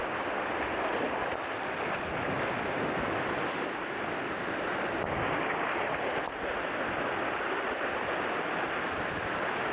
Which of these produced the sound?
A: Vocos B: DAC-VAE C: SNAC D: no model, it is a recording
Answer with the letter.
D